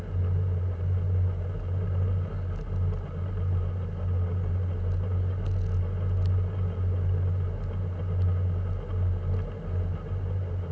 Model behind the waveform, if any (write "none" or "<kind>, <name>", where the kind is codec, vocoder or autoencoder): none